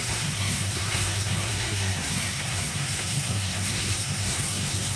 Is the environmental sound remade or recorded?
remade